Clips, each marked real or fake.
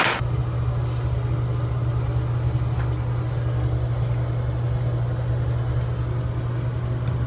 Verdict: real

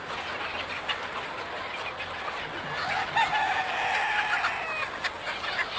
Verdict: real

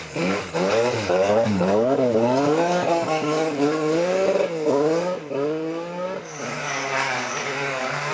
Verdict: fake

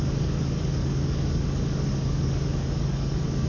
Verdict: fake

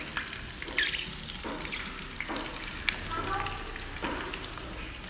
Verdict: real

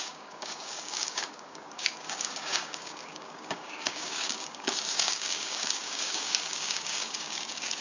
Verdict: fake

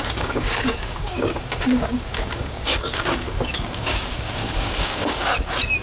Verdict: fake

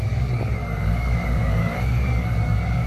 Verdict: fake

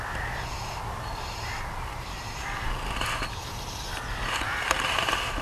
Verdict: real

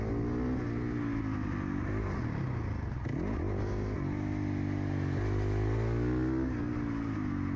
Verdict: real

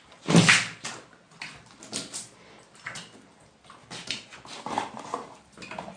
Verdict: real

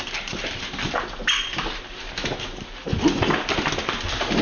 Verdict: real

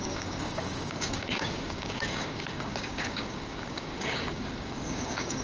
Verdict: fake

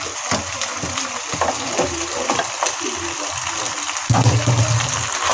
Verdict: real